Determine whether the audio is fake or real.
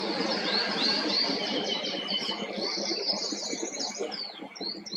fake